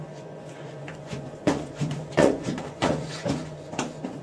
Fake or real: fake